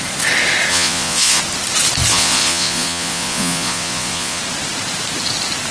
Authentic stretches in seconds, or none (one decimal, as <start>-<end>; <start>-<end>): 0.0-0.7; 1.4-2.1; 4.4-5.7